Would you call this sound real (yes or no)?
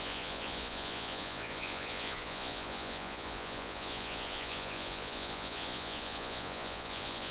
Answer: no